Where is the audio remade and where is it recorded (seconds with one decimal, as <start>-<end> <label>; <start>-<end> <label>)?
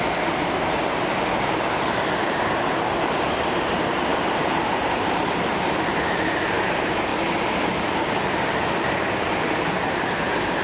0.0-7.1 remade; 7.1-8.2 recorded; 8.2-10.6 remade